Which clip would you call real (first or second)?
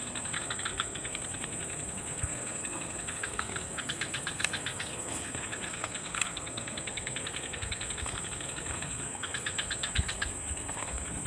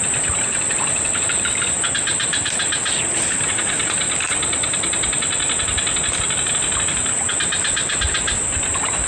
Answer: second